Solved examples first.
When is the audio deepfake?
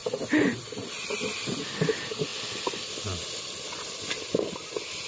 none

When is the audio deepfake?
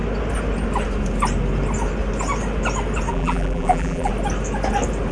3.1-4.1 (vocoder, BigVGAN v2)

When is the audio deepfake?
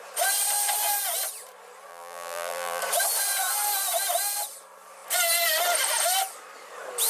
1.9-2.8 (vocoder, BigVGAN v2)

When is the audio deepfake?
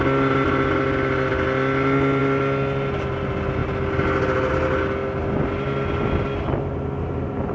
none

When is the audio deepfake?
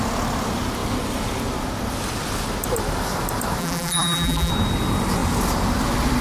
3.6-4.5 (vocoder, BigVGAN v2)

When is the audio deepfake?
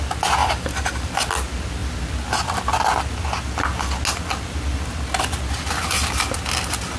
0.4-1.1 (vocoder, BigVGAN v2)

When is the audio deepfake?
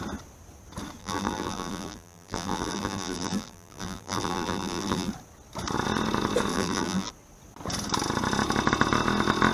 1.0-5.1 (vocoder, BigVGAN v2); 6.5-7.1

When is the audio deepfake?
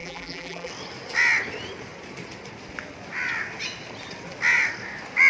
0.0-0.7 (vocoder, BigVGAN v2)